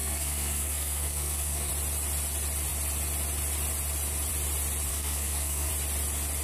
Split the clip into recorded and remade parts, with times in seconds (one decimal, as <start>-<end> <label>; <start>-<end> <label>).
0.0-1.7 remade; 1.7-4.9 recorded; 4.9-5.7 remade; 5.7-6.4 recorded